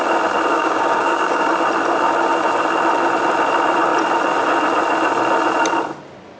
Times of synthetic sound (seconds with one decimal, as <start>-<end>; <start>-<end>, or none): 0.5-1.5